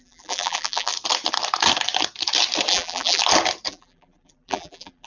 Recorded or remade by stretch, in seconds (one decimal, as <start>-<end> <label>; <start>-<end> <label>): 0.0-0.9 remade; 0.9-2.7 recorded; 2.7-3.2 remade; 3.2-3.7 recorded; 3.7-5.1 remade